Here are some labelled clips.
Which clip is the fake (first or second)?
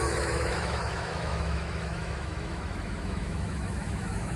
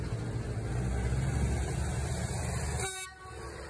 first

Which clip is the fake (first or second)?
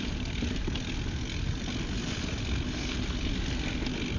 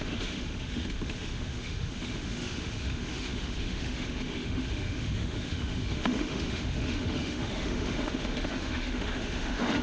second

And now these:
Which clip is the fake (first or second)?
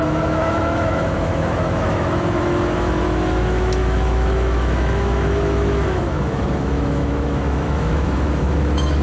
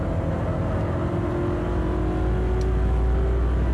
first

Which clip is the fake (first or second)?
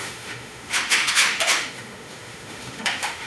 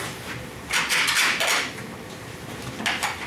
first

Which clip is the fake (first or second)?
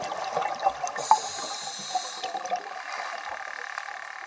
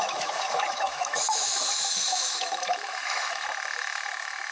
second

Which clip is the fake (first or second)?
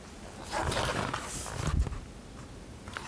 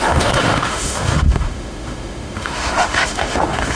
second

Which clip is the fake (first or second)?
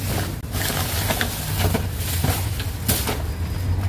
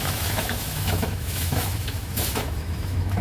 second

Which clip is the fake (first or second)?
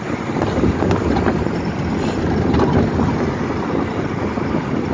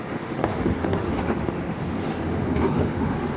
second